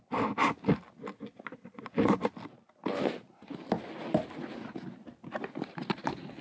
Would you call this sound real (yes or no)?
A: yes